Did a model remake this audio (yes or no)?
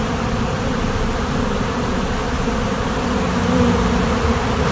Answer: no